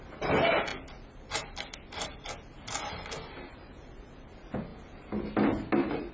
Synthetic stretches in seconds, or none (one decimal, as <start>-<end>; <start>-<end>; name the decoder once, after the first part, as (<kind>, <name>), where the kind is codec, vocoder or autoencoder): none